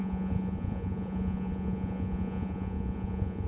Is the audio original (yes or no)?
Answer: no